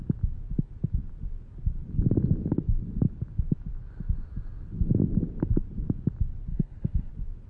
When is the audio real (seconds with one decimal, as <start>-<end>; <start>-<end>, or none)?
0.0-6.5; 7.1-7.5